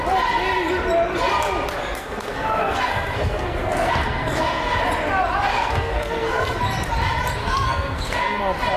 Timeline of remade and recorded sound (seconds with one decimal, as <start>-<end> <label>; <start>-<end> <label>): 0.0-1.8 recorded; 1.8-4.8 remade; 4.8-5.5 recorded; 5.5-6.6 remade; 6.6-7.4 recorded; 7.4-8.4 remade; 8.4-8.8 recorded